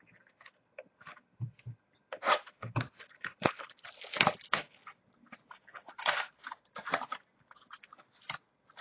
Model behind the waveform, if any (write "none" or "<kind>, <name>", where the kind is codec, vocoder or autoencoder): none